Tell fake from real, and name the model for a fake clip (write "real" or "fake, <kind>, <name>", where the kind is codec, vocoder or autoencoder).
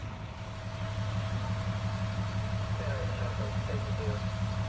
real